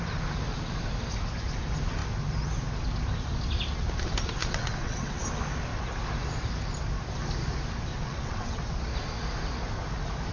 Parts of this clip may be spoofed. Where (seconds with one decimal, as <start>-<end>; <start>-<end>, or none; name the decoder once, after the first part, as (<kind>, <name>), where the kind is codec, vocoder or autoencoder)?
4.4-5.2 (vocoder, WaveNeXt); 7.9-8.7

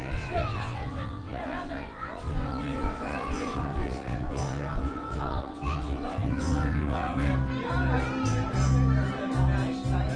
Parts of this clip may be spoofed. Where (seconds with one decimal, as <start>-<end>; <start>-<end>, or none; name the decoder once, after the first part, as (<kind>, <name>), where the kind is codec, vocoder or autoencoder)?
0.0-7.3 (vocoder, WaveNeXt)

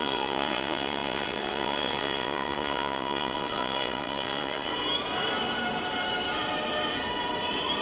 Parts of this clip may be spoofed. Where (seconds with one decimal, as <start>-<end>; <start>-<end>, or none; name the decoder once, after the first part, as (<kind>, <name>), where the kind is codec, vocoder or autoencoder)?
0.0-4.7 (vocoder, WaveNeXt)

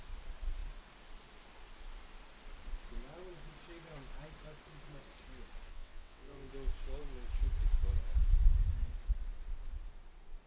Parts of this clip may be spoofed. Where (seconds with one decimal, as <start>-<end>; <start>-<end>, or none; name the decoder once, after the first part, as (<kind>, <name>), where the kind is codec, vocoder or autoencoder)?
5.7-6.5 (vocoder, WaveNeXt)

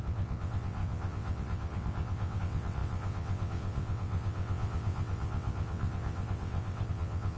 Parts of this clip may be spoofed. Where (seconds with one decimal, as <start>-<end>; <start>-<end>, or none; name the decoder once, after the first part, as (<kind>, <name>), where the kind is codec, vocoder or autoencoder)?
0.0-7.4 (vocoder, WaveNeXt)